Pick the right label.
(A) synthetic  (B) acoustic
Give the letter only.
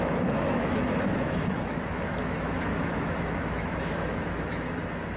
A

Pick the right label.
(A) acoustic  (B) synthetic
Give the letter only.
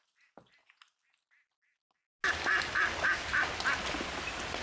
A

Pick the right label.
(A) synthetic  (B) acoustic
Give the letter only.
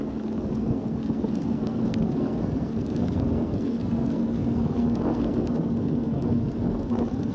A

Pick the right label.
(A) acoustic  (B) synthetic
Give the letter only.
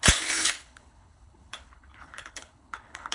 B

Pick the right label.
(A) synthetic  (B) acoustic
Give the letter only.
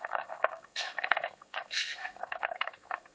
A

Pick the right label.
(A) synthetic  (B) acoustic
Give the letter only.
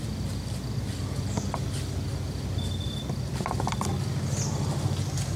B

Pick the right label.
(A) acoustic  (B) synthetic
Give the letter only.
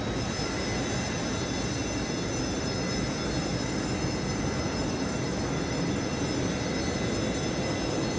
A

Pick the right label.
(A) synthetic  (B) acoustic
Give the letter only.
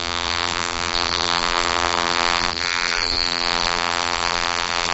A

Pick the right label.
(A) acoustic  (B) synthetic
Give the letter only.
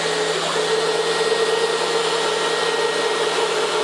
A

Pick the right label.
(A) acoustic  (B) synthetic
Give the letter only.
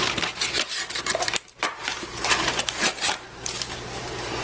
B